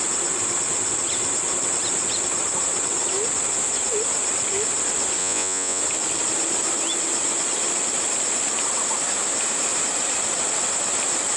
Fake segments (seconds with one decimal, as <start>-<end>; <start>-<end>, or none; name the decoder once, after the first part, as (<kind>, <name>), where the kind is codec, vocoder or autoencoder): 5.2-5.8 (vocoder, Vocos)

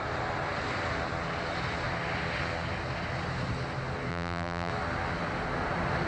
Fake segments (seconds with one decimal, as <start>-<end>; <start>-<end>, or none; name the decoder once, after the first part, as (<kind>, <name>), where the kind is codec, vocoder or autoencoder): 4.1-4.7 (vocoder, BigVGAN v2)

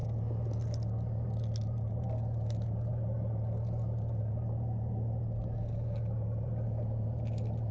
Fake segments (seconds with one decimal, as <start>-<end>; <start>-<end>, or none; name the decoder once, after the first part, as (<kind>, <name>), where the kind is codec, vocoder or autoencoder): none

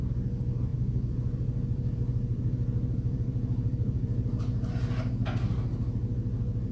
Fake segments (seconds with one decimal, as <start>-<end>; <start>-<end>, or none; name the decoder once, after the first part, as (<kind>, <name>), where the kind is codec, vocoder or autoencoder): 0.7-4.7 (vocoder, BigVGAN v2)

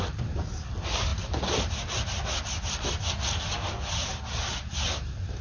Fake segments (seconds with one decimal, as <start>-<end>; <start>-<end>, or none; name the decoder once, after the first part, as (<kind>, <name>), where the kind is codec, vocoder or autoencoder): none

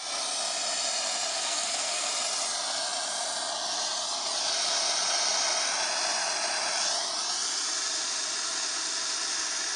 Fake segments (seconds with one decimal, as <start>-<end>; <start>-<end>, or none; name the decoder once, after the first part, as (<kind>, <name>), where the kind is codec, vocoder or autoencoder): 1.3-2.1 (codec, SNAC)